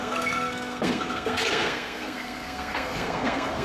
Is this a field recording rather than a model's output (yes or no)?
no